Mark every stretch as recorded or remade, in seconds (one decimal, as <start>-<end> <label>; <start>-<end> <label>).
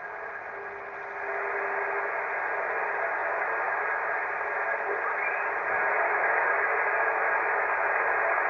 0.0-8.5 recorded